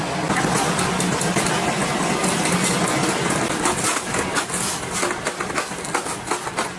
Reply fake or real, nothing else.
real